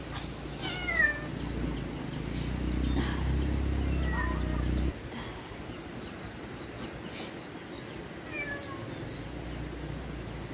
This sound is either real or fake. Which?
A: real